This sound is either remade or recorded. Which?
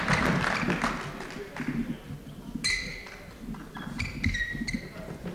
recorded